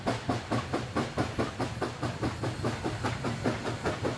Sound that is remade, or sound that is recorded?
remade